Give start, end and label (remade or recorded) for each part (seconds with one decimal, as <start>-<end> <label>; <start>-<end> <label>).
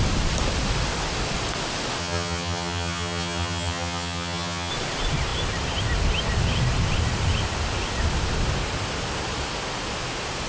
0.0-2.0 recorded; 2.0-4.7 remade; 4.7-10.5 recorded